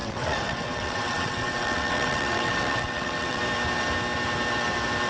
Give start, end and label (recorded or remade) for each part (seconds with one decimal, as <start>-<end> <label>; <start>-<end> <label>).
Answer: 0.0-3.4 remade; 3.4-5.1 recorded